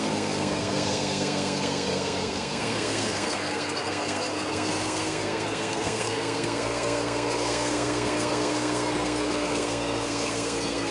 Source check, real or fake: fake